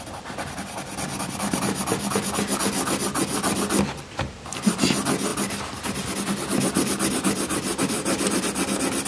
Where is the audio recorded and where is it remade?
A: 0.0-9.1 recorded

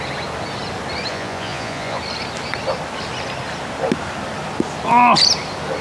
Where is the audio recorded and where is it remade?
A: 0.0-1.1 recorded; 1.1-2.0 remade; 2.0-5.8 recorded

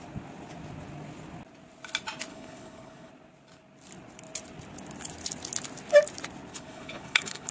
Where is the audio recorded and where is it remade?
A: 0.0-2.3 recorded; 2.3-3.1 remade; 3.1-6.5 recorded; 6.5-7.5 remade

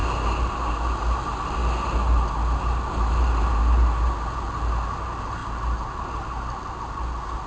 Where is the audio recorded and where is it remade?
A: 0.0-7.5 recorded

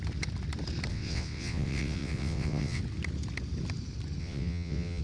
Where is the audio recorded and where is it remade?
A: 0.0-0.9 recorded; 0.9-2.8 remade; 2.8-4.2 recorded; 4.2-5.0 remade